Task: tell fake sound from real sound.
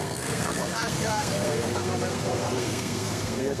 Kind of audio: fake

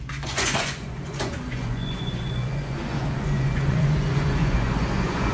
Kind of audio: fake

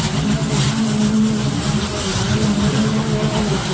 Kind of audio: real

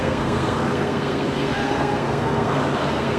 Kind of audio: fake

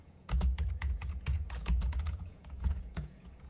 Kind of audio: fake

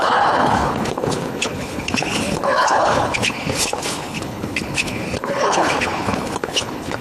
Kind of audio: fake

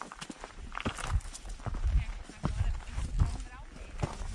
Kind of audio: real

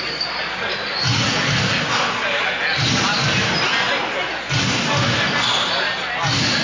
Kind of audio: real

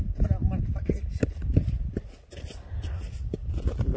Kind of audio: real